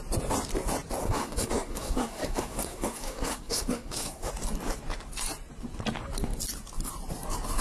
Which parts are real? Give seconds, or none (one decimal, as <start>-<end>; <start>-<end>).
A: 0.0-1.0; 4.3-7.6